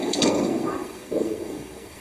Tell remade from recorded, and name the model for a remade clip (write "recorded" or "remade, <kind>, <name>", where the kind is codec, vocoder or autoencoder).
remade, codec, SNAC